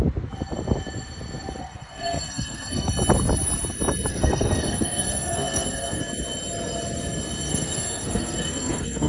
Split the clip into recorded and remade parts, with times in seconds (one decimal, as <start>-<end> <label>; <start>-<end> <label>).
0.0-1.6 recorded; 1.6-2.9 remade; 2.9-4.1 recorded; 4.1-6.0 remade; 6.0-7.5 recorded; 7.5-9.1 remade